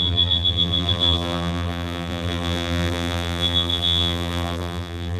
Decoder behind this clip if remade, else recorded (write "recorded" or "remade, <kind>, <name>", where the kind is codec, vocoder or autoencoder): remade, vocoder, BigVGAN v2